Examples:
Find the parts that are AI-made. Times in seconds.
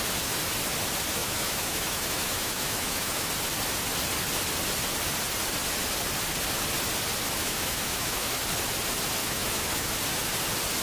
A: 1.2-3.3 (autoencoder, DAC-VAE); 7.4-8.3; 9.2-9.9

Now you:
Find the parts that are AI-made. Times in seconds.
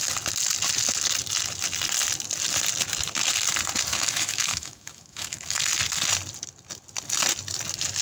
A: 3.9-5.6 (autoencoder, DAC-VAE)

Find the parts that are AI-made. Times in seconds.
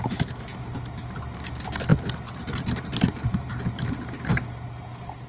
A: 1.9-3.6 (vocoder, BigVGAN v2)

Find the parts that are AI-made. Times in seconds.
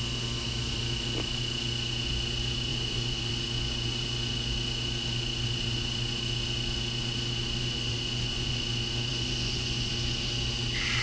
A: 2.7-3.3 (vocoder, Vocos); 7.6-8.6; 9.1-9.9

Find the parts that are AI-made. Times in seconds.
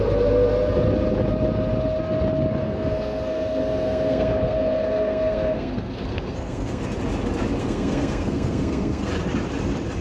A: 2.6-6.8 (codec, SNAC); 7.6-9.1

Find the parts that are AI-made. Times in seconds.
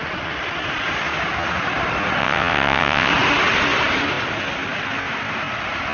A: 2.2-3.1 (vocoder, WaveNeXt)